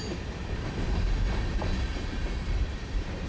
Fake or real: real